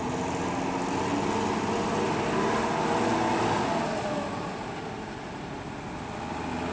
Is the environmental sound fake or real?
real